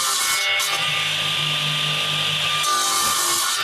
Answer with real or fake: real